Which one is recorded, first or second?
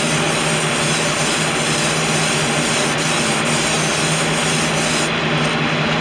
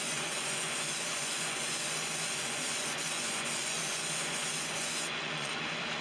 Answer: first